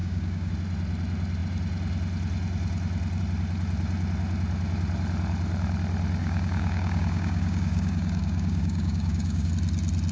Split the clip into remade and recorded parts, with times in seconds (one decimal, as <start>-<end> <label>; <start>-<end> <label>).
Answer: 0.0-0.5 remade; 0.5-6.2 recorded; 6.2-9.5 remade; 9.5-10.1 recorded